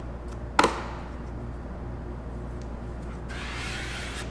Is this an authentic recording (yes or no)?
yes